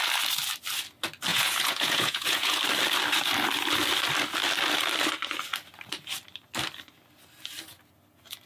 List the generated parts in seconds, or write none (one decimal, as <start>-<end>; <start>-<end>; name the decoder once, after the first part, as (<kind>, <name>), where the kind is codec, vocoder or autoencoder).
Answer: 1.3-2.6 (vocoder, Vocos)